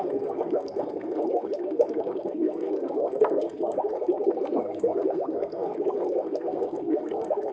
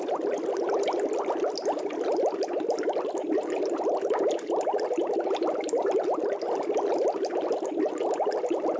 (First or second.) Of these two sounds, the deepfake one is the first